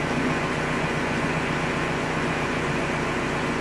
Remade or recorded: remade